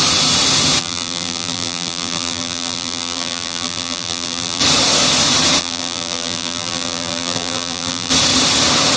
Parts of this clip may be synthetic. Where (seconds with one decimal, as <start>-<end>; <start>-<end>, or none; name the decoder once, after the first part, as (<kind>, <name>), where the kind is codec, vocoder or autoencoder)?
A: 0.8-4.6 (vocoder, BigVGAN v2); 5.6-8.1